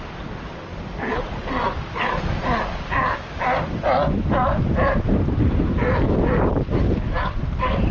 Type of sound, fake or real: real